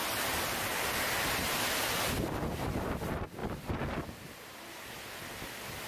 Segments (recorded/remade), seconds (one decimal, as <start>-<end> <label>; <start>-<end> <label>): 0.0-3.4 recorded; 3.4-4.0 remade; 4.0-5.9 recorded

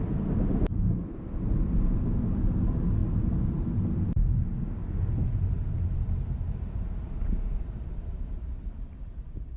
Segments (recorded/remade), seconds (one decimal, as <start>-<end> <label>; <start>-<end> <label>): 0.0-9.6 recorded

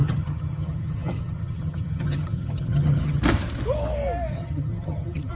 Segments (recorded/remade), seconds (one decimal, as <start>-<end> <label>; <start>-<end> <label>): 0.0-3.2 remade; 3.2-4.3 recorded; 4.3-5.3 remade

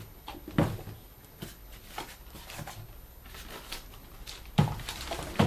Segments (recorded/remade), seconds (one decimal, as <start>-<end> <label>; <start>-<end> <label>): 0.0-4.0 recorded; 4.0-5.5 remade

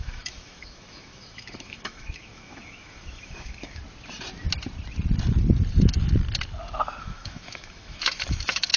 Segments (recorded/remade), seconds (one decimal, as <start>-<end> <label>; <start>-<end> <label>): 0.0-3.8 remade; 3.8-7.0 recorded; 7.0-8.8 remade